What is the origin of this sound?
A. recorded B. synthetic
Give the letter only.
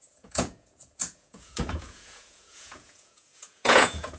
B